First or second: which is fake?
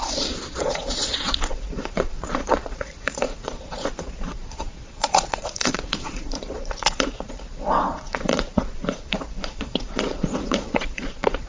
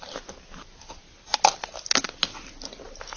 first